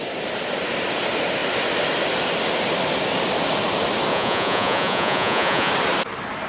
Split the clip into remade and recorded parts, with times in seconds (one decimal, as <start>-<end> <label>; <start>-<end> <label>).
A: 0.0-4.1 recorded; 4.1-5.7 remade; 5.7-6.5 recorded